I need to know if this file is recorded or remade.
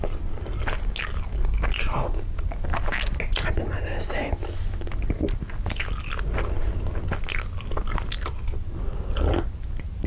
recorded